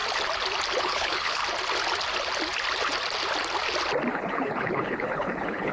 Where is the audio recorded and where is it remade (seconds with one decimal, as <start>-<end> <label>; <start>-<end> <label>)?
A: 0.0-0.8 recorded; 0.8-1.4 remade; 1.4-4.1 recorded; 4.1-5.7 remade